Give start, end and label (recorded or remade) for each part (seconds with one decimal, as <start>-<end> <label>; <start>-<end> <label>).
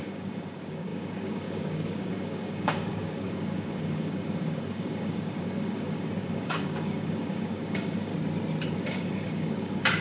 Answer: 0.0-8.1 remade; 8.1-8.7 recorded; 8.7-10.0 remade